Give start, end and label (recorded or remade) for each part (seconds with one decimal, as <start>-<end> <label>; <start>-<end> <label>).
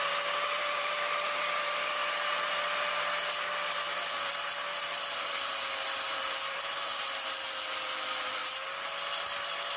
0.0-2.0 remade; 2.0-3.9 recorded; 3.9-8.4 remade; 8.4-9.8 recorded